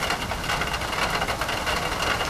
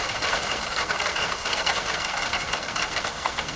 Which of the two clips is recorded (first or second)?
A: first